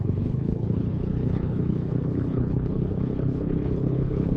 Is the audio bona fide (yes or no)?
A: no